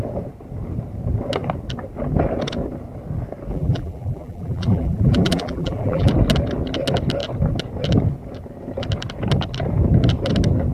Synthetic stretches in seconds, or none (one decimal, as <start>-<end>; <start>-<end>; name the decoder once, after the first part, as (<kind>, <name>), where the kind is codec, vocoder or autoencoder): 3.5-6.1 (vocoder, BigVGAN v2)